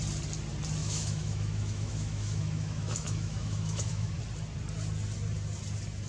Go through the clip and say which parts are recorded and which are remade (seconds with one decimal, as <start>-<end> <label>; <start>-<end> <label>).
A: 0.0-0.8 recorded; 0.8-4.1 remade; 4.1-6.1 recorded